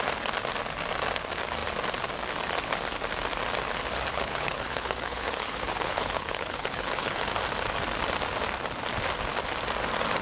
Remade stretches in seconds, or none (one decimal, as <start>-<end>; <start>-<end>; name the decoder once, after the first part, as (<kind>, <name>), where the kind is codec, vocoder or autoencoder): 4.1-7.3 (codec, HILCodec)